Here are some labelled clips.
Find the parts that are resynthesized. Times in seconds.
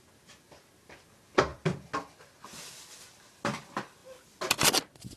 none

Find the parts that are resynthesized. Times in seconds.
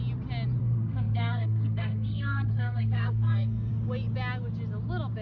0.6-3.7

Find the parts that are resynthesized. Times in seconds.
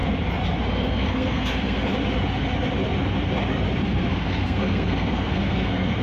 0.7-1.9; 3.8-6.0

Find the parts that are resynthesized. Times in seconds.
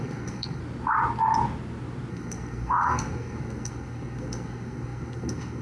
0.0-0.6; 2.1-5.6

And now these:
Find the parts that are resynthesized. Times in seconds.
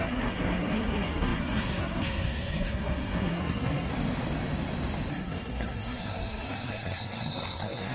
0.0-3.9; 5.1-7.9